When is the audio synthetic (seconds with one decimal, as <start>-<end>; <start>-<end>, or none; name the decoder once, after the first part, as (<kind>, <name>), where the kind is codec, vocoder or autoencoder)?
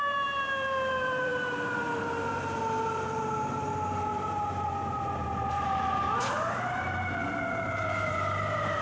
0.0-8.8 (vocoder, BigVGAN v2)